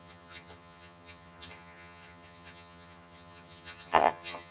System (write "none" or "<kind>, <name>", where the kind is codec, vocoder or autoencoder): vocoder, HiFi-GAN